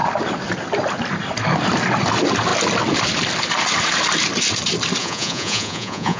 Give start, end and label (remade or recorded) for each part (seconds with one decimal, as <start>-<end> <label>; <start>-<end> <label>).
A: 0.0-5.0 recorded; 5.0-6.2 remade